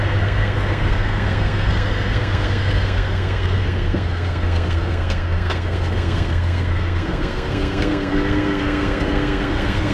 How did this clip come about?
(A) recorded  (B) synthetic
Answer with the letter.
B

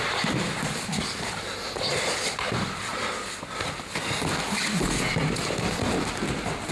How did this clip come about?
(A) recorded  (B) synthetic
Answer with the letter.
A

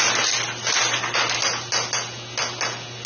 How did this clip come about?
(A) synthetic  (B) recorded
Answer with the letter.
B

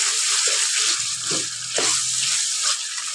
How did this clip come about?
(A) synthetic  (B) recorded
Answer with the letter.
B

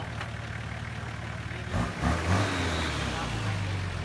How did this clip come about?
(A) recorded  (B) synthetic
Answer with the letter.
A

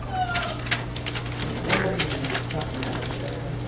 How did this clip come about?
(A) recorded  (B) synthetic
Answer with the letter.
A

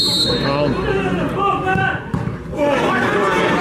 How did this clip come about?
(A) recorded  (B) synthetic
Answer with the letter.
A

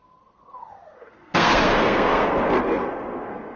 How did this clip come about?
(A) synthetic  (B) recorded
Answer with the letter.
A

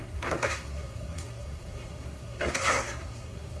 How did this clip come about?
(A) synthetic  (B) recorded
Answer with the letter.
A